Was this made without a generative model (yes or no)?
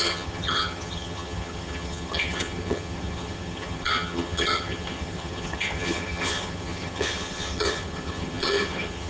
no